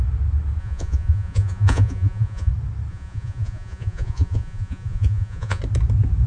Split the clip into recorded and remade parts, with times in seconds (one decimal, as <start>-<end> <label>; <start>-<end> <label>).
0.0-0.6 recorded; 0.6-2.5 remade; 2.5-2.9 recorded; 2.9-5.6 remade; 5.6-6.3 recorded